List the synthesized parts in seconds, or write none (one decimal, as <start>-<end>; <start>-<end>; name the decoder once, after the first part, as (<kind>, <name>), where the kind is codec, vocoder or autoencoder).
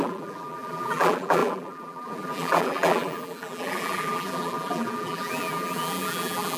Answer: 0.0-6.6 (vocoder, BigVGAN v2)